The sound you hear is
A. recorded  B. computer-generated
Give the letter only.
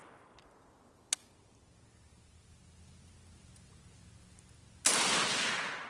A